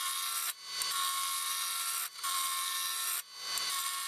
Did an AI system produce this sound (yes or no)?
no